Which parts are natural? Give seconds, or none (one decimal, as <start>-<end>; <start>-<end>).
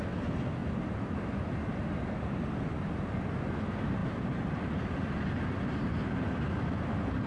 0.0-4.0; 4.6-7.3